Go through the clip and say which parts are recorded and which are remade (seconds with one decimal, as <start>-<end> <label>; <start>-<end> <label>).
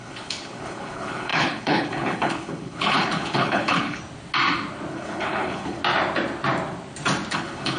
0.0-4.0 remade; 4.0-4.9 recorded; 4.9-5.8 remade; 5.8-7.3 recorded; 7.3-7.8 remade